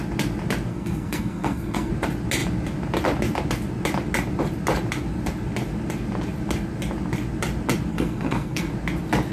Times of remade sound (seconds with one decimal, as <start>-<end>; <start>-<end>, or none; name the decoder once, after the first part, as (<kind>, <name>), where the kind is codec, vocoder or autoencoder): 0.7-1.9 (codec, SNAC); 7.9-8.7